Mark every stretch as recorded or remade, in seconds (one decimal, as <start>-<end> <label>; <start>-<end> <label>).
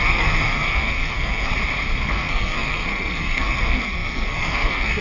0.0-1.5 remade; 1.5-2.0 recorded; 2.0-5.0 remade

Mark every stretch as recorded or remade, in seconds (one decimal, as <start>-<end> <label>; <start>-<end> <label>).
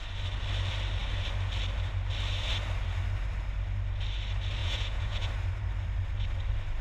0.0-4.6 recorded; 4.6-5.3 remade; 5.3-6.8 recorded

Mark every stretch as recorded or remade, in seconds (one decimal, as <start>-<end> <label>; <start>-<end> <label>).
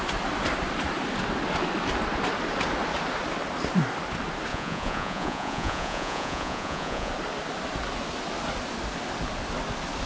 0.0-4.5 recorded; 4.5-7.1 remade; 7.1-10.1 recorded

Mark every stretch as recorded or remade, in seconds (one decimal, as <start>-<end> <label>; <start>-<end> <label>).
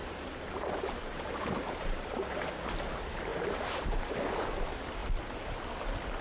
0.0-2.5 remade; 2.5-3.3 recorded; 3.3-4.1 remade; 4.1-6.2 recorded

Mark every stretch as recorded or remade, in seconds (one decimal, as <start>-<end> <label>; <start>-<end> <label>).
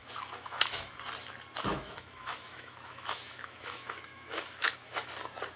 0.0-1.0 remade; 1.0-1.7 recorded; 1.7-5.1 remade; 5.1-5.6 recorded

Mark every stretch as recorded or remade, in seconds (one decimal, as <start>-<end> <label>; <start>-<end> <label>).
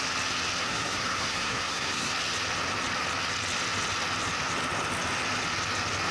0.0-0.6 recorded; 0.6-2.1 remade; 2.1-6.1 recorded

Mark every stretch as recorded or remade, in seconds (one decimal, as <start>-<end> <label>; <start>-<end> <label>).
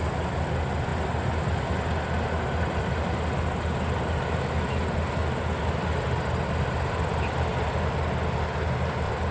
0.0-9.3 recorded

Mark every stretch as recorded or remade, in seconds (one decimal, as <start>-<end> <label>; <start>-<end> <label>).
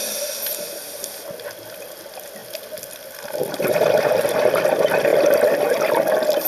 0.0-2.4 recorded; 2.4-4.0 remade; 4.0-5.1 recorded; 5.1-6.5 remade